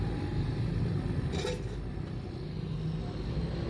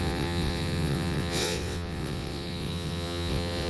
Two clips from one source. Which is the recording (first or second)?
first